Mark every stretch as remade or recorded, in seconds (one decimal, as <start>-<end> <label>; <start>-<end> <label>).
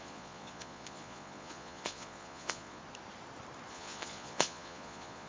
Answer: 0.0-2.8 remade; 2.8-3.7 recorded; 3.7-5.3 remade